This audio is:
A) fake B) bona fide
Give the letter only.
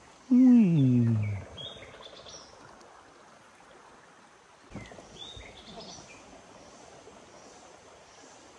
B